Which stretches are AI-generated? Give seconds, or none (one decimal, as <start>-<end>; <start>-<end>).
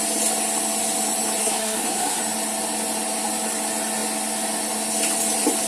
1.4-2.2